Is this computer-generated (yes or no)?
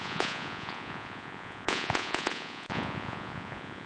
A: yes